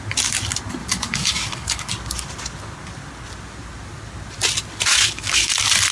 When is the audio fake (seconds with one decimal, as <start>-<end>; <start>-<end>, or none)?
0.8-1.9; 4.9-5.5